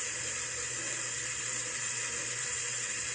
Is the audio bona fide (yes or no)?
yes